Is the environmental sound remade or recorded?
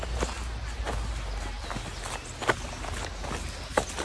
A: recorded